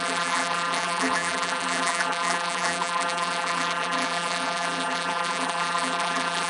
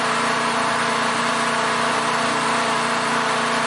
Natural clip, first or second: second